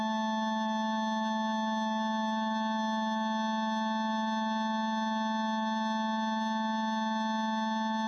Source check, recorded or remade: recorded